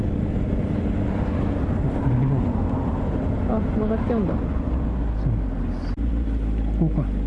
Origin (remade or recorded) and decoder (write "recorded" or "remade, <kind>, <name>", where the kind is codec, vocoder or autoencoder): recorded